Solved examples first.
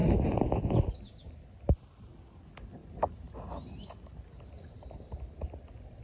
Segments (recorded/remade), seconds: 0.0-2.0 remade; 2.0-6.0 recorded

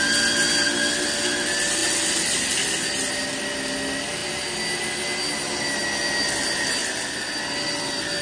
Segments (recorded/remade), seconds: 0.0-8.2 recorded

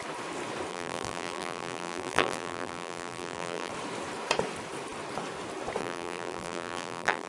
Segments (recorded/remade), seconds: 0.0-0.7 recorded; 0.7-3.7 remade; 3.7-5.8 recorded; 5.8-7.3 remade

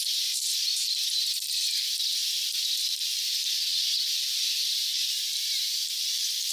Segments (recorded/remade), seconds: 0.0-6.5 remade